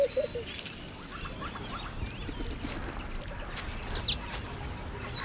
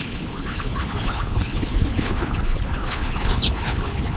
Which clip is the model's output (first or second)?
second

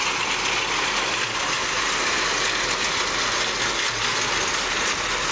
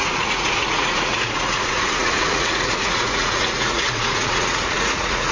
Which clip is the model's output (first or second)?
second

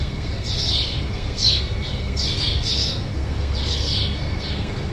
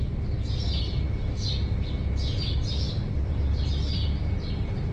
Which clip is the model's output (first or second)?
first